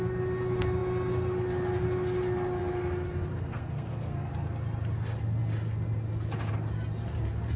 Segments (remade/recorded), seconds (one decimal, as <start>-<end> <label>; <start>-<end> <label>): 0.0-3.3 recorded; 3.3-4.3 remade; 4.3-7.6 recorded